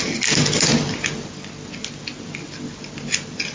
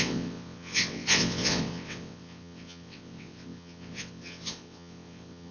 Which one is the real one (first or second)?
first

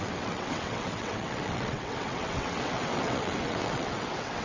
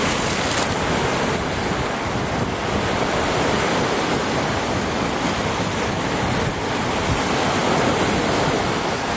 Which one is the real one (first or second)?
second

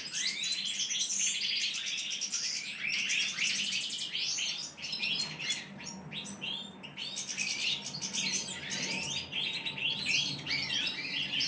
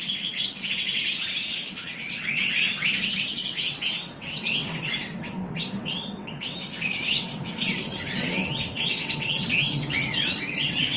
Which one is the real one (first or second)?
first